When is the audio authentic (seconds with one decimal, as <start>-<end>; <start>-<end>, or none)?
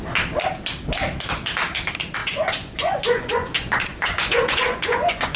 0.0-2.2